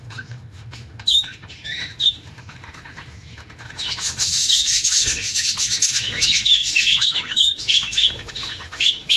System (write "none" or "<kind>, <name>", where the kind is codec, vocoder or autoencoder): autoencoder, DAC-VAE